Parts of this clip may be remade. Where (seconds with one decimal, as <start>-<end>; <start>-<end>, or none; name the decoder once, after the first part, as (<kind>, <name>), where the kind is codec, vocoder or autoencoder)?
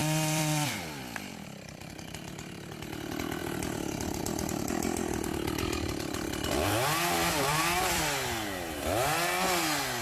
0.0-1.9 (vocoder, BigVGAN v2); 7.5-8.0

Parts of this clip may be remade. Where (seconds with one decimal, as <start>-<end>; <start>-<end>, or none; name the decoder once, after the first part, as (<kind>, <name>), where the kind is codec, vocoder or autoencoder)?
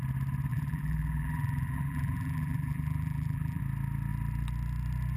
0.5-3.6 (vocoder, BigVGAN v2)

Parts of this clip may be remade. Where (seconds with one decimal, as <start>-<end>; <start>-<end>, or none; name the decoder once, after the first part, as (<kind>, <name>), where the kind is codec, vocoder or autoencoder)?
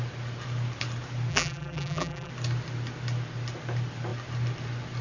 1.3-2.3 (vocoder, BigVGAN v2)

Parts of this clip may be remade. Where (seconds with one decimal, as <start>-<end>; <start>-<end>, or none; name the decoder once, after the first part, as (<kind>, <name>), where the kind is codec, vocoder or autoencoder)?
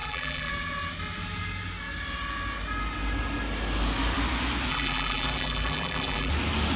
0.0-0.5 (vocoder, BigVGAN v2); 4.7-6.3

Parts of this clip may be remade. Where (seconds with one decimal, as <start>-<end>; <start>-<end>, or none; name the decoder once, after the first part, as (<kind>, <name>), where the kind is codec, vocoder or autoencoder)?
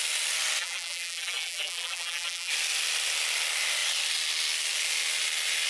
0.6-2.5 (vocoder, BigVGAN v2)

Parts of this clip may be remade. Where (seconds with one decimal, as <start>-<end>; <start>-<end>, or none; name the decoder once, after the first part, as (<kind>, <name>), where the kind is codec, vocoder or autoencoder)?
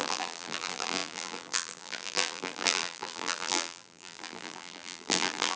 0.0-5.6 (vocoder, BigVGAN v2)